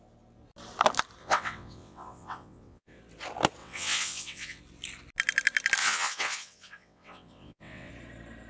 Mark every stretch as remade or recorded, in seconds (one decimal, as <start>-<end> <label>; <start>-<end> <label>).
0.0-1.2 recorded; 1.2-3.0 remade; 3.0-3.6 recorded; 3.6-4.6 remade; 4.6-5.8 recorded; 5.8-7.9 remade; 7.9-8.5 recorded